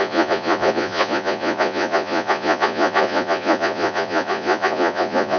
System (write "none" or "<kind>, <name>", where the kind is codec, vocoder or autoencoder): vocoder, Vocos